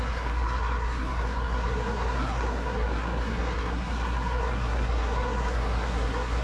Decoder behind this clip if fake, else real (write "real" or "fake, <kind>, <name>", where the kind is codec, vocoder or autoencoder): fake, codec, SNAC